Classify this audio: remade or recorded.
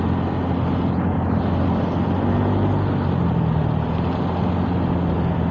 recorded